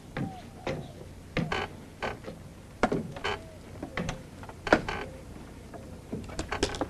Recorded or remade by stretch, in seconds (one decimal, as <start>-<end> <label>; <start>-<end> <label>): 0.0-2.5 recorded; 2.5-3.2 remade; 3.2-3.9 recorded; 3.9-6.3 remade; 6.3-6.9 recorded